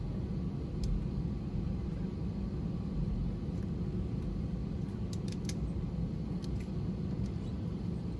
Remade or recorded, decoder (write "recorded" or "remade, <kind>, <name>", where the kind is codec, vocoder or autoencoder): recorded